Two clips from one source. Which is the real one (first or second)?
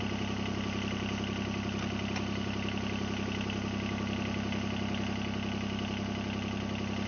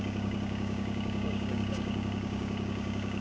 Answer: first